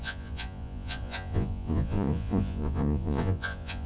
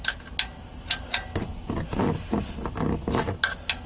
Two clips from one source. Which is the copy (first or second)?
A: first